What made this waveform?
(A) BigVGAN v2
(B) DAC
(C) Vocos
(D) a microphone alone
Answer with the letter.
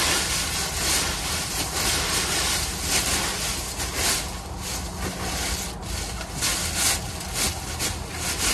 D